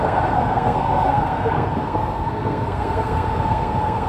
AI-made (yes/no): yes